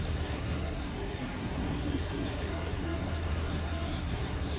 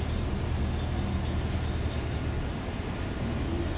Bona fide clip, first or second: second